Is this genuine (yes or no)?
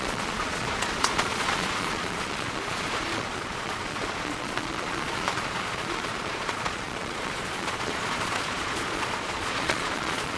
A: no